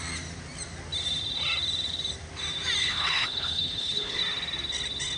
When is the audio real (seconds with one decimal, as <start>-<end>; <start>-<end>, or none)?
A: 0.0-2.8; 4.2-5.2